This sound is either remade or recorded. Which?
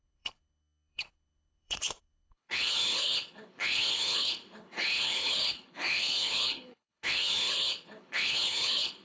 remade